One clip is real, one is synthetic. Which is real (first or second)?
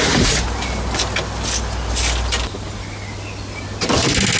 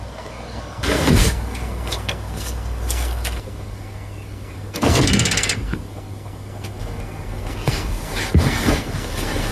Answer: first